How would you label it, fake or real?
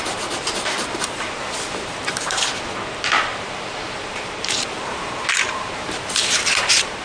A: fake